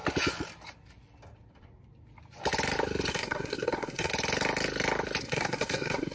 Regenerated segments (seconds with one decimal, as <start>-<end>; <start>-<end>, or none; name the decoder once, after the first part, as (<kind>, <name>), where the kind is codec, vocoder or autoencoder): 3.1-4.1 (codec, SNAC); 5.2-6.1